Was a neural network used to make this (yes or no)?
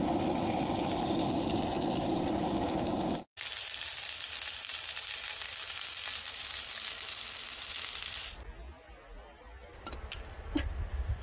no